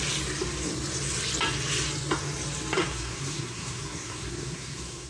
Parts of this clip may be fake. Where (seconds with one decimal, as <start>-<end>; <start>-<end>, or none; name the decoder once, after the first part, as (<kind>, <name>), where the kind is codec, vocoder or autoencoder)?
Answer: 2.8-5.1 (codec, SNAC)